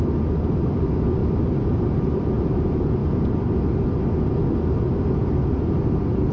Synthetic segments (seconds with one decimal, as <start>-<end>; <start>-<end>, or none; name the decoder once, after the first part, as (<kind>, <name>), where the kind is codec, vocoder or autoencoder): 1.2-2.6 (vocoder, BigVGAN v2)